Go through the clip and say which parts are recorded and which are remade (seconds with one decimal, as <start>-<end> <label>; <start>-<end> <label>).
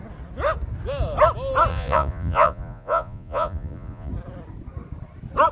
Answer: 0.0-1.7 recorded; 1.7-4.1 remade; 4.1-5.5 recorded